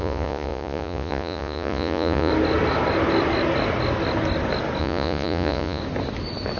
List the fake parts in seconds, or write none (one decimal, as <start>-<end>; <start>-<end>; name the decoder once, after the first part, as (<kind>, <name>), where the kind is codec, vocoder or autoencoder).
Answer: 0.0-2.3 (vocoder, Vocos); 4.8-5.8